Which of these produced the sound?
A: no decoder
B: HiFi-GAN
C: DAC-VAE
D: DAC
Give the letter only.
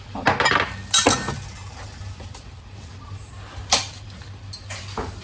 A